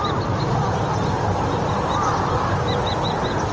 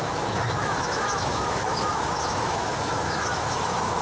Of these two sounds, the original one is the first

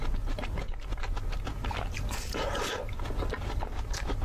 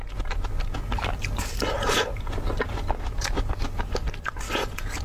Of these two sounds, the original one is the second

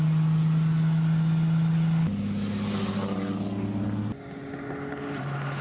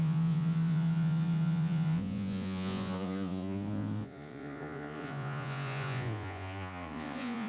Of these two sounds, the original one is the first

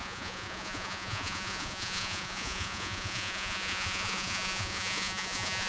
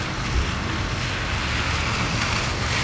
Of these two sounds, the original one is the second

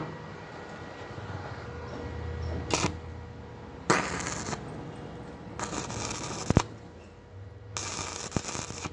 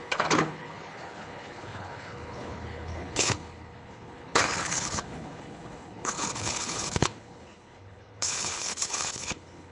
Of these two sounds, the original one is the first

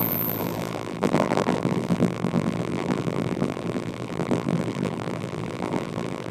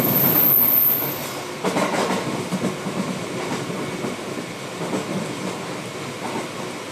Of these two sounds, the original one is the second